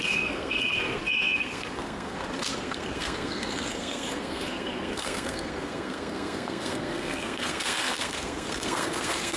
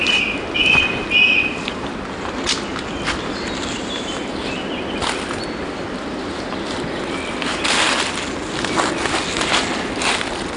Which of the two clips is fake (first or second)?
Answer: first